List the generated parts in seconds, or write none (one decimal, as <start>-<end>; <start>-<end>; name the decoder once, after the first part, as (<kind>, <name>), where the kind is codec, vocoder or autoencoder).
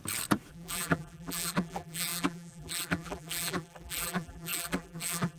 0.5-5.4 (vocoder, BigVGAN v2)